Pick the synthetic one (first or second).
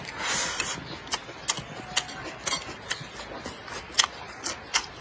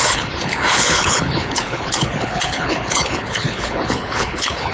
second